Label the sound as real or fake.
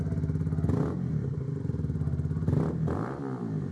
real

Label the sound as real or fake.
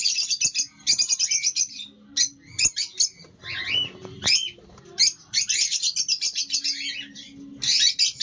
real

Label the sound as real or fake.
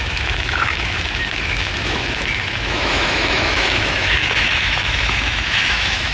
fake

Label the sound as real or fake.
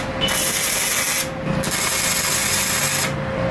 real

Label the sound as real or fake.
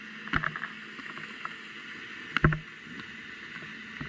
real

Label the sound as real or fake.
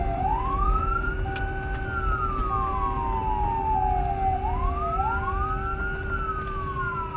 real